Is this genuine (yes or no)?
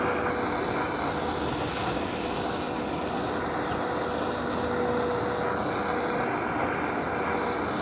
yes